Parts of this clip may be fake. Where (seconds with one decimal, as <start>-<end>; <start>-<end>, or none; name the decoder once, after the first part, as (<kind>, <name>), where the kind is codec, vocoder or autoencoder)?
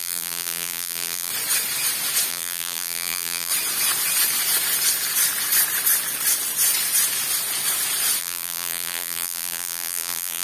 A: 0.0-1.3 (vocoder, BigVGAN v2); 2.3-3.5; 8.2-10.4